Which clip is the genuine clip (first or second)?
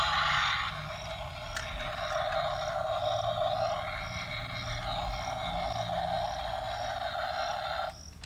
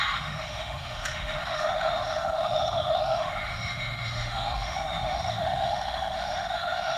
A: first